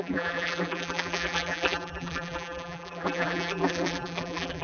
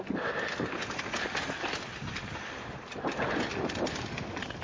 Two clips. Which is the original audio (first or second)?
second